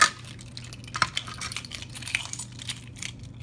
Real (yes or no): yes